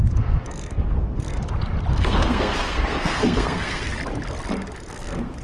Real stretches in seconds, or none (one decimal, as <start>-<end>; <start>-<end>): 1.4-1.9; 3.9-4.9